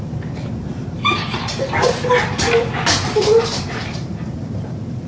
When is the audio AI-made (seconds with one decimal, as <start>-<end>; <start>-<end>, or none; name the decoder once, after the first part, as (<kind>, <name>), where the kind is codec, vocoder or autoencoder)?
none